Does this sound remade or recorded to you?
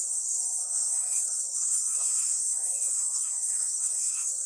remade